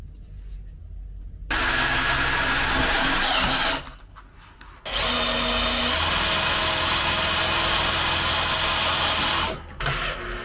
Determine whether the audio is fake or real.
real